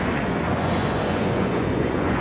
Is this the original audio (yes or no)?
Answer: no